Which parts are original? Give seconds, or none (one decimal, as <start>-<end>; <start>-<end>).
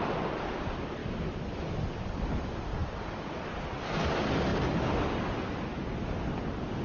0.0-2.8; 4.1-6.8